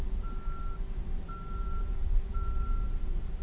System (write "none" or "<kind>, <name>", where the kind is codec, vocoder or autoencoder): none